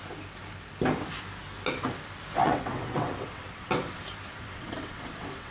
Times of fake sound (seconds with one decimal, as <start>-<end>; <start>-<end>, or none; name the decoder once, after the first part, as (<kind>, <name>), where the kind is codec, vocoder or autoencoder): 2.4-4.0 (vocoder, WaveNeXt); 4.4-5.5